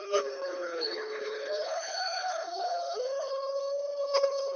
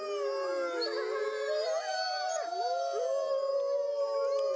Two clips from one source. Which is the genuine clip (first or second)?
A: second